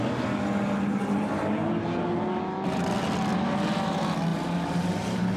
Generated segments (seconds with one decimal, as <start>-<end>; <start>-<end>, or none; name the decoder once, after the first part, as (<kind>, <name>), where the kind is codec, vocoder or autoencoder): 4.3-5.4 (vocoder, BigVGAN v2)

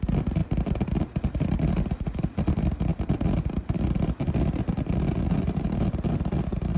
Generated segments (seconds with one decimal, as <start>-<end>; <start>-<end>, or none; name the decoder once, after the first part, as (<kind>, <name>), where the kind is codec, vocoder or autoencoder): 0.4-4.3 (vocoder, BigVGAN v2)

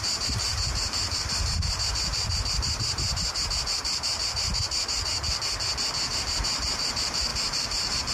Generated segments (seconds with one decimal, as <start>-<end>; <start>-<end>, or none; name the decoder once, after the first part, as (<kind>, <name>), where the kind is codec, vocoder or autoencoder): 0.0-5.1 (vocoder, BigVGAN v2); 6.1-8.1

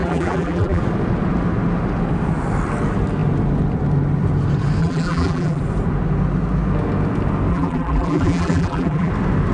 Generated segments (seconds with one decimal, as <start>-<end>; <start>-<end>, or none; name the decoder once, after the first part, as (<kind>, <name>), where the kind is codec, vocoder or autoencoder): 0.0-0.8 (vocoder, BigVGAN v2); 4.8-5.6; 7.5-9.1

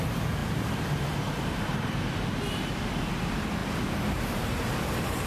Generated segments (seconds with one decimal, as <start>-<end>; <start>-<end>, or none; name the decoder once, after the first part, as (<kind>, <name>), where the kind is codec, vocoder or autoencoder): 3.6-5.3 (vocoder, BigVGAN v2)

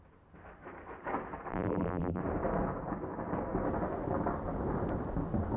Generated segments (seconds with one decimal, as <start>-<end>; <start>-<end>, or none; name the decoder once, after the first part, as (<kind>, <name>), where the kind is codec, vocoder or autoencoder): 1.5-2.2 (vocoder, BigVGAN v2)

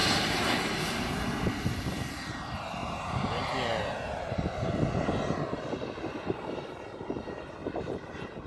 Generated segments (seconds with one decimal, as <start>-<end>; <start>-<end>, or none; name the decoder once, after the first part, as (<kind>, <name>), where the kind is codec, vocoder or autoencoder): 0.0-1.9 (vocoder, BigVGAN v2); 2.8-3.5; 7.6-8.1